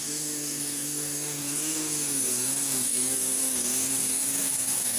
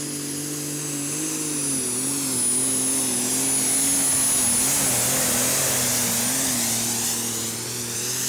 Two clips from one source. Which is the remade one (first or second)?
first